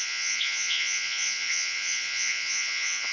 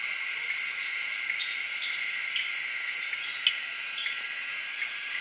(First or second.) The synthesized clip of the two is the first